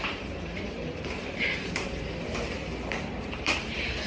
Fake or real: fake